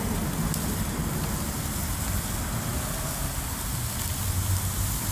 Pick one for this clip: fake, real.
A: fake